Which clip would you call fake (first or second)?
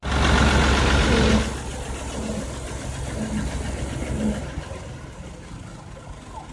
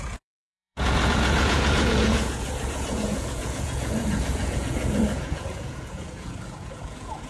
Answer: second